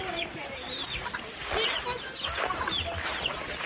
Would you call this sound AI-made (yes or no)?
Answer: no